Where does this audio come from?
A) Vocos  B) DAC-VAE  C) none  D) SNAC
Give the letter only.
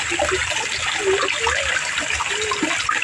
C